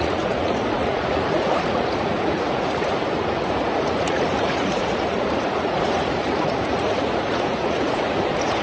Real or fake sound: fake